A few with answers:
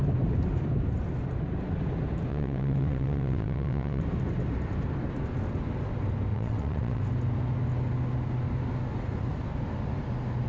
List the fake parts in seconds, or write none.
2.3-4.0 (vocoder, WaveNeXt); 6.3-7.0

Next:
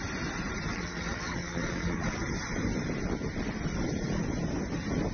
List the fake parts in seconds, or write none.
0.7-2.2 (vocoder, WaveNeXt)

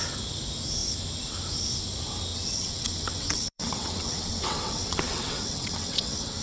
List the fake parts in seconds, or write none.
2.3-6.4 (vocoder, WaveNeXt)

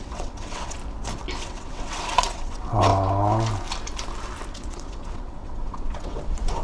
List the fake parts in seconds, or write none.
0.0-0.8 (vocoder, WaveNeXt); 1.4-2.9; 4.5-6.6

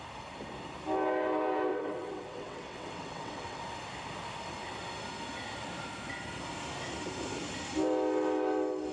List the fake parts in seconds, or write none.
1.7-3.6 (vocoder, WaveNeXt)

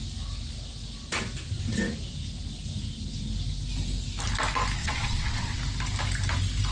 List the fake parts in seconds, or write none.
4.8-5.6 (vocoder, WaveNeXt)

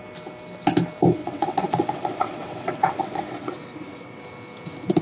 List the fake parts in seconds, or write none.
1.2-4.2 (vocoder, WaveNeXt)